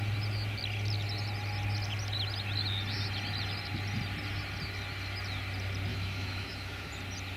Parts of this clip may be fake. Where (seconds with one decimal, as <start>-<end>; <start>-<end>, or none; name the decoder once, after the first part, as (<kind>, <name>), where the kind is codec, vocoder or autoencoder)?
5.9-6.9 (autoencoder, DAC-VAE)